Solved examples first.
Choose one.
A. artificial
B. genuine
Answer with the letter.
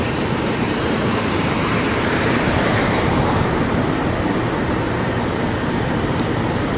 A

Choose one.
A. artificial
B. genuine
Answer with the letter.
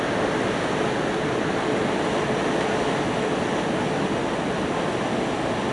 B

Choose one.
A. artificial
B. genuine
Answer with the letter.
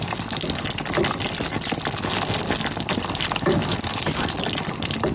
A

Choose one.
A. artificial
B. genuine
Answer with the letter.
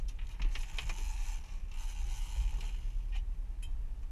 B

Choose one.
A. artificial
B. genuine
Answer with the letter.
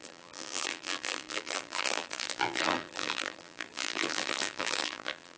A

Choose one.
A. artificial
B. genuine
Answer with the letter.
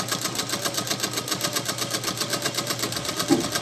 B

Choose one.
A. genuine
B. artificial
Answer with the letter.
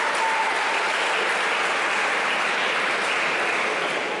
A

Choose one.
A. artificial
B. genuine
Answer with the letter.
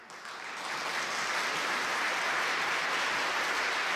B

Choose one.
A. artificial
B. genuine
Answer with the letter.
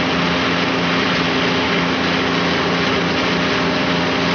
B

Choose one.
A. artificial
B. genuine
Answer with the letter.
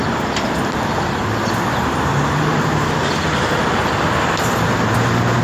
B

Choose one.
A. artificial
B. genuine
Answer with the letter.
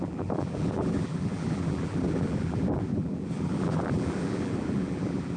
A